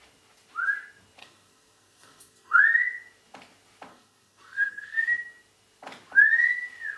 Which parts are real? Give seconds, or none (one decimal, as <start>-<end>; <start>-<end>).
0.0-1.2; 2.6-3.9; 5.0-7.0